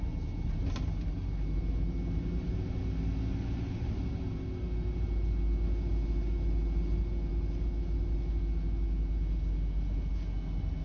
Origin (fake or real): real